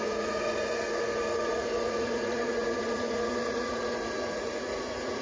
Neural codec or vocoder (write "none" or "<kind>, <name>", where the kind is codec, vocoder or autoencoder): vocoder, Vocos